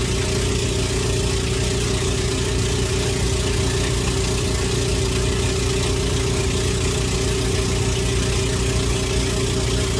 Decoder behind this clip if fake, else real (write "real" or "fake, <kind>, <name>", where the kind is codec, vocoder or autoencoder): real